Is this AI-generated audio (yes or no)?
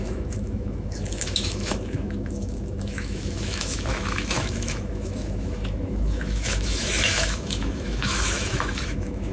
yes